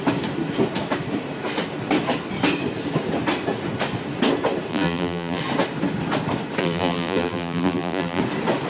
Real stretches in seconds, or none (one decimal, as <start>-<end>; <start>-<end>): 0.0-4.7; 5.4-6.6; 8.2-8.7